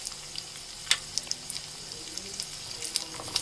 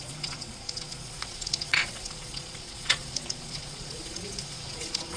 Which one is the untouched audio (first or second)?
first